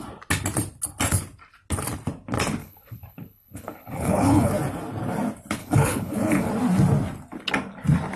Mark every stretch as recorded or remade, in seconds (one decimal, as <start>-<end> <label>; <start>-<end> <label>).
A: 0.0-2.6 recorded; 2.6-4.5 remade; 4.5-5.6 recorded; 5.6-6.5 remade; 6.5-8.2 recorded